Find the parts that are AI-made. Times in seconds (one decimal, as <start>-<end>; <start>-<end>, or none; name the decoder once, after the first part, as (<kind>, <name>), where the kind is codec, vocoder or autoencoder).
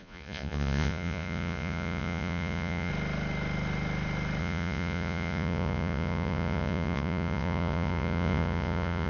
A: 0.0-2.9 (vocoder, Vocos); 4.4-9.1